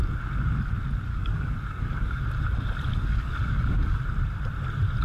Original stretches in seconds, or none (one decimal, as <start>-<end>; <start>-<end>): 0.0-1.1; 2.2-2.9; 4.0-5.0